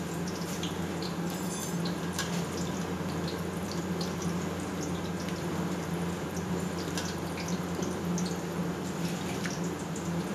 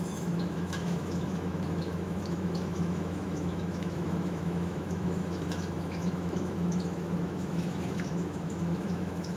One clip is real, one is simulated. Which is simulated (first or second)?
second